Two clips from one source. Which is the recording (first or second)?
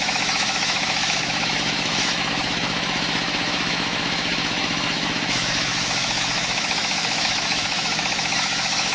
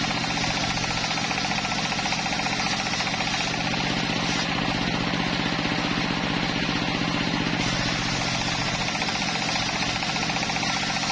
second